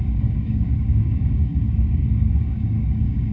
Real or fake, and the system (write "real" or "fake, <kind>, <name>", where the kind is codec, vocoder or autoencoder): fake, codec, DAC